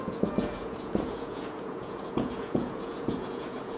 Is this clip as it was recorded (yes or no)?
no